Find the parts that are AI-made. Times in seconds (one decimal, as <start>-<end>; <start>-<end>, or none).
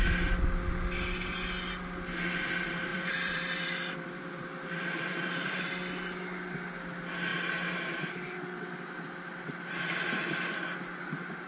2.9-5.7